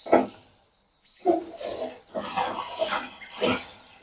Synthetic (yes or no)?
no